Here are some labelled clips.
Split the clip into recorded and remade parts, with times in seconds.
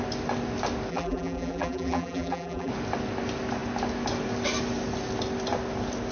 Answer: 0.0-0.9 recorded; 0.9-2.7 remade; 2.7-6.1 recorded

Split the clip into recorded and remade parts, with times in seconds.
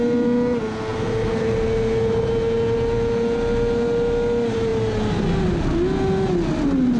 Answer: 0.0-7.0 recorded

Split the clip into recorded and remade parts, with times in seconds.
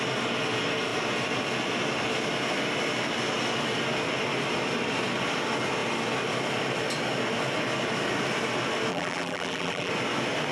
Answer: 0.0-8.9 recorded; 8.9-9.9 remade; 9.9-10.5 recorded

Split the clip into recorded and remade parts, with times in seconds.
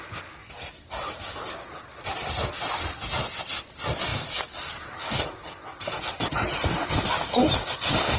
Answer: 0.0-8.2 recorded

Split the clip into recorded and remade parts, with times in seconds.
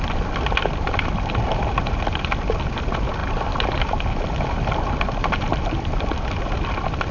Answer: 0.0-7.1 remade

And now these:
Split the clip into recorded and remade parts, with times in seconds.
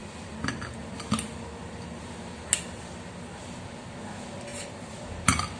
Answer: 0.0-4.5 recorded; 4.5-5.0 remade; 5.0-5.6 recorded